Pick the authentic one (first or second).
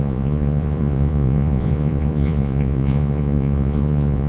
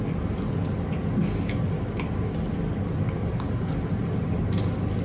second